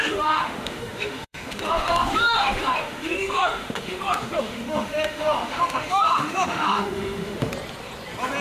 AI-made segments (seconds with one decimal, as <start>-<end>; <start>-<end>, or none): 0.0-7.5

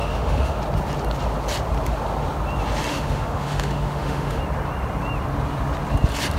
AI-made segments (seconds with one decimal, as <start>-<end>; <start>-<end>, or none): 0.0-0.6; 2.9-4.4

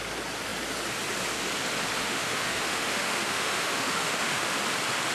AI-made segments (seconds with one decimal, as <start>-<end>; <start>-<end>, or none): 2.0-4.5

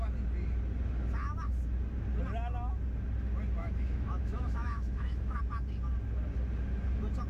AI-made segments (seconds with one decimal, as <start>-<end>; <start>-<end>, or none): 3.6-5.4

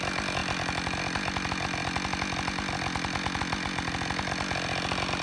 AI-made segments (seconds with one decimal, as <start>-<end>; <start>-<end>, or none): none

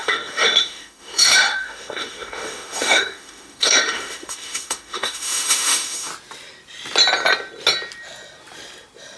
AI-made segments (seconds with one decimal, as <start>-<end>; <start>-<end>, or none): 0.0-6.1